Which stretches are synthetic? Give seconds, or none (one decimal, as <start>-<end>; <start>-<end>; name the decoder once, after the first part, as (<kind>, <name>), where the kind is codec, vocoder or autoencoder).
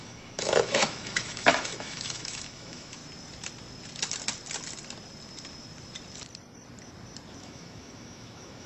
0.0-3.0 (autoencoder, DAC-VAE); 7.4-8.7